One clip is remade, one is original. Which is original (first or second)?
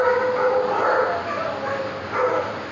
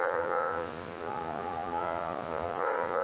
first